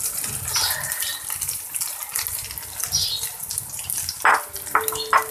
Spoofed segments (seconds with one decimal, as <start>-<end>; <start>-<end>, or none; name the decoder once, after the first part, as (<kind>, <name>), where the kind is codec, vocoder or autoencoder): none